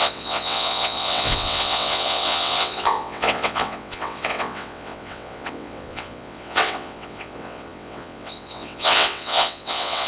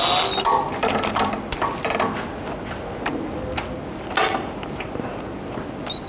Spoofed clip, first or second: first